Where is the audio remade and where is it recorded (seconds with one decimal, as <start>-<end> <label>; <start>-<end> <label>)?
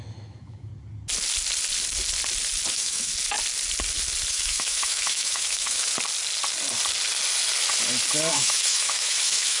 0.0-0.7 remade; 0.7-2.7 recorded; 2.7-3.1 remade; 3.1-4.3 recorded; 4.3-5.9 remade; 5.9-8.3 recorded; 8.3-9.6 remade